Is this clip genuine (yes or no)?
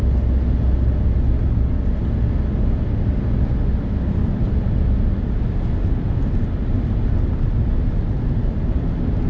yes